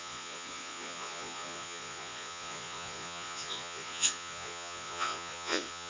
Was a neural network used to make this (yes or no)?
yes